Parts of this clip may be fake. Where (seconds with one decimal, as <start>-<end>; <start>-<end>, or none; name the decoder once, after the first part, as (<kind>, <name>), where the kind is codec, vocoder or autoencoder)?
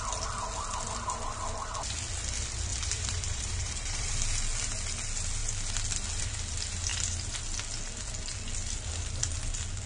2.7-4.1 (vocoder, BigVGAN v2)